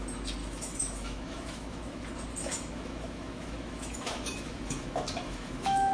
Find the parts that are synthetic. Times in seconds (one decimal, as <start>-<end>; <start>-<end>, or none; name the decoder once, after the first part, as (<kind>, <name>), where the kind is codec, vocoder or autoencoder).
0.4-2.0 (autoencoder, DAC-VAE); 2.4-5.9